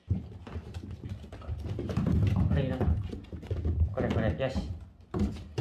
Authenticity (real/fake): real